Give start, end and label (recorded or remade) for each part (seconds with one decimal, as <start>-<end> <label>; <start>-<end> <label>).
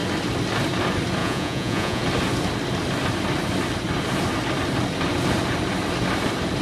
0.0-1.2 recorded; 1.2-2.0 remade; 2.0-6.6 recorded